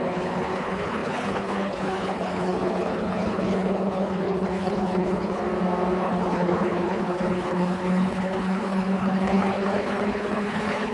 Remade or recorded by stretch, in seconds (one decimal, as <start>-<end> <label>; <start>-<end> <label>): 0.0-5.4 remade; 5.4-6.0 recorded; 6.0-10.9 remade